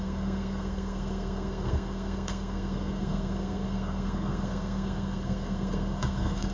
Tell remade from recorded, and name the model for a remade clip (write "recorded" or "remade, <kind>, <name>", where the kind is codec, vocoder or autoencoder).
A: remade, codec, SNAC